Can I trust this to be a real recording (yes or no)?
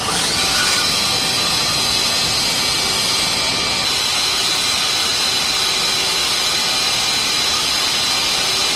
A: yes